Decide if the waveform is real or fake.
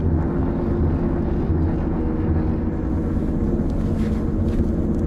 real